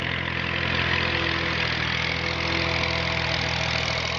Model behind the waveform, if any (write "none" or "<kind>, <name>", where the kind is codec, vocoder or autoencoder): none